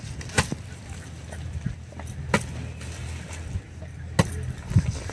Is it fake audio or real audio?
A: real